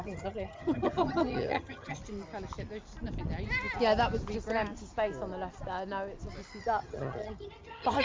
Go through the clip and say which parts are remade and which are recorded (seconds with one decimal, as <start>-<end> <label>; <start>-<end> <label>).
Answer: 0.0-2.0 remade; 2.0-6.6 recorded; 6.6-8.0 remade